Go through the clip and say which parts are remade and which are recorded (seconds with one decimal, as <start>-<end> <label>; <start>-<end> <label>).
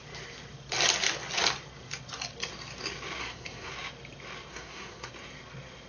0.0-3.2 recorded; 3.2-3.7 remade; 3.7-4.5 recorded; 4.5-5.1 remade; 5.1-5.9 recorded